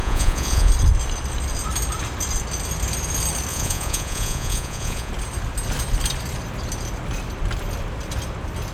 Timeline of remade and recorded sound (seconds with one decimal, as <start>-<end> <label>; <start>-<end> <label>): 0.0-0.7 remade; 0.7-3.5 recorded; 3.5-5.1 remade; 5.1-8.7 recorded